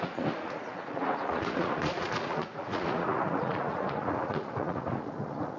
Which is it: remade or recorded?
remade